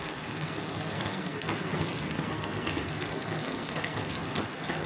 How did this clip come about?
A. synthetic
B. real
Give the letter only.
A